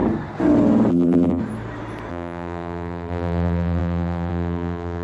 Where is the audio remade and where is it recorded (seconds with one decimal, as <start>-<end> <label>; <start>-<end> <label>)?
0.0-0.9 recorded; 0.9-1.4 remade; 1.4-2.1 recorded; 2.1-5.0 remade